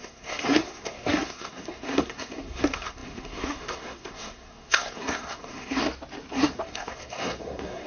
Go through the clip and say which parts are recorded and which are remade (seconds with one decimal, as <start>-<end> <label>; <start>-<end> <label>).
0.0-5.8 remade; 5.8-6.3 recorded; 6.3-7.9 remade